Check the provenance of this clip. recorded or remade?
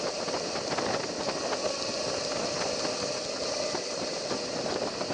recorded